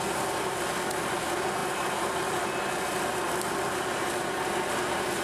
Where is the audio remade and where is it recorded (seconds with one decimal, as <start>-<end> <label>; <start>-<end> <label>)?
0.0-5.2 recorded